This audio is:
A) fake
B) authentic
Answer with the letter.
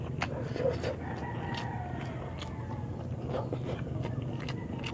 B